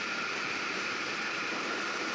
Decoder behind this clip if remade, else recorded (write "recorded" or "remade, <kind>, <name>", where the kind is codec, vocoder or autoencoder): remade, vocoder, BigVGAN v2